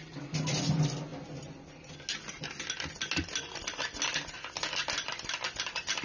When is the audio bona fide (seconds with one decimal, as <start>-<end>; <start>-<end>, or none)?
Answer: 0.0-1.1; 1.9-6.0

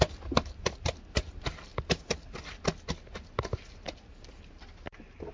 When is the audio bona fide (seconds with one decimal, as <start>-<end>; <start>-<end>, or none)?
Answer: 0.0-5.3